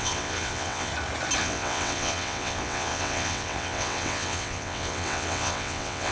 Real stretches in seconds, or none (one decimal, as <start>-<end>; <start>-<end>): 0.9-1.4